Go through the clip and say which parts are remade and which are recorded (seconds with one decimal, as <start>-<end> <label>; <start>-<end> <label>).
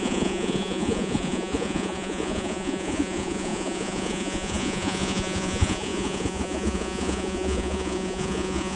0.0-8.8 remade